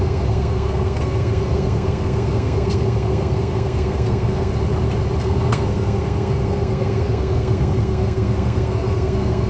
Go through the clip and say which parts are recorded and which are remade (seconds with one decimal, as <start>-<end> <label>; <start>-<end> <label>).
0.0-4.5 remade; 4.5-5.2 recorded; 5.2-9.5 remade